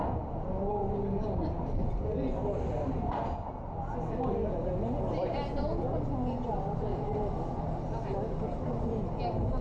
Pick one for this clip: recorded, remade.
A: recorded